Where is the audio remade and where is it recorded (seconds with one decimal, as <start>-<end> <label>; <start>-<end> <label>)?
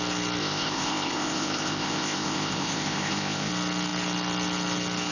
0.0-0.4 recorded; 0.4-3.5 remade; 3.5-5.1 recorded